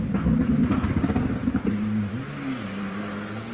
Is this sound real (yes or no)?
yes